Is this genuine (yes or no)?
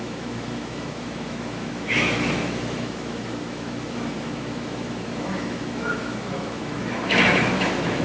no